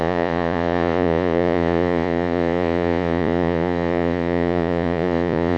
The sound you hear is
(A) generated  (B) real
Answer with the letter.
A